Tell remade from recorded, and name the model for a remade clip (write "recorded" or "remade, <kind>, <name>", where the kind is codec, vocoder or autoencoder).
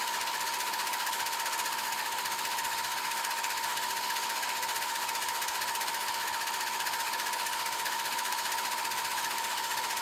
remade, autoencoder, DAC-VAE